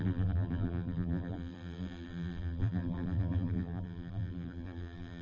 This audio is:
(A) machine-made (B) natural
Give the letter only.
A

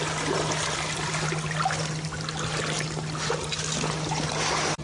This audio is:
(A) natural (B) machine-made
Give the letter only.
A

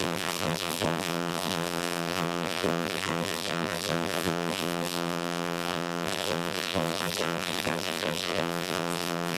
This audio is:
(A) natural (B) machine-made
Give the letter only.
B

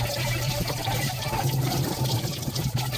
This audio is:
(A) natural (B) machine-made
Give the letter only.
B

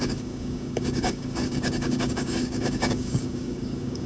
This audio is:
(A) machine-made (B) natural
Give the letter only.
A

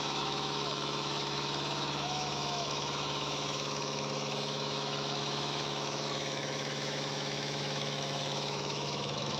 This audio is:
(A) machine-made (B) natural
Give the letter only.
A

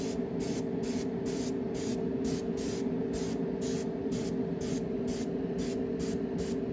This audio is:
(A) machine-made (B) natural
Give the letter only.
B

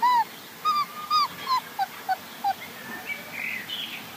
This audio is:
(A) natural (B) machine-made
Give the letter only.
A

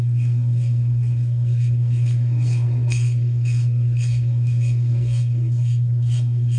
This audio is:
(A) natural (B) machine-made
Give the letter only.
B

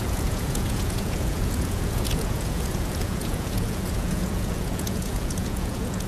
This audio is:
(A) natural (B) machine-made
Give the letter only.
B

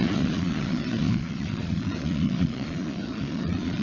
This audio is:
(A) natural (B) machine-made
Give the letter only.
B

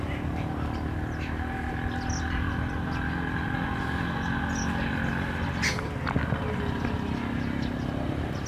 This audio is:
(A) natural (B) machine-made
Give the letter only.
A